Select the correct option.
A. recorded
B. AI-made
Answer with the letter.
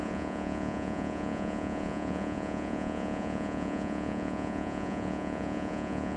B